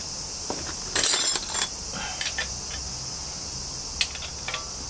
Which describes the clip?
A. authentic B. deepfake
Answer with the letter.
A